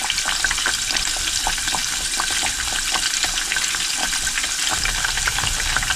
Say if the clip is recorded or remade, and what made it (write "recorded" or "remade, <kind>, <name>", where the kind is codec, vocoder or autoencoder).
recorded